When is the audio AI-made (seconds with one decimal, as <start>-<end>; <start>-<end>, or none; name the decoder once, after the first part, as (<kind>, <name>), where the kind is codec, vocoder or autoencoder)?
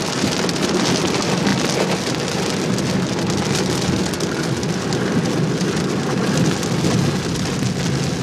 none